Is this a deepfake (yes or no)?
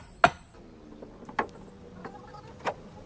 no